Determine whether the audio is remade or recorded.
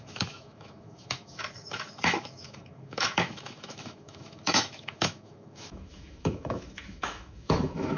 remade